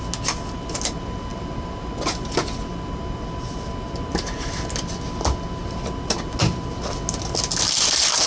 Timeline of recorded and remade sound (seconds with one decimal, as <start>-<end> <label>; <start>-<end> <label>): 0.0-8.3 recorded